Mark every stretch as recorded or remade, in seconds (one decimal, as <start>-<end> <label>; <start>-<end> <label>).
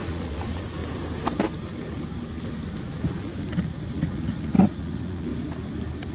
0.0-0.8 remade; 0.8-2.8 recorded; 2.8-3.3 remade; 3.3-3.8 recorded; 3.8-5.3 remade; 5.3-6.1 recorded